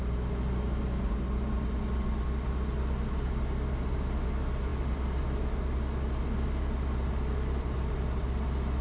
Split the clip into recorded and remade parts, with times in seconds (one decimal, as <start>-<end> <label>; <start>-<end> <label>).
0.0-8.8 recorded